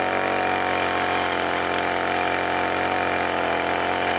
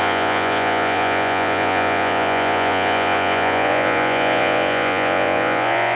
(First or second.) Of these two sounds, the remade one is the second